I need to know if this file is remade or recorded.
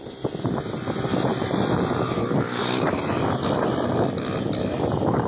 recorded